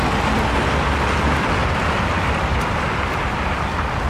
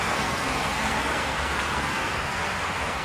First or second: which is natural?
first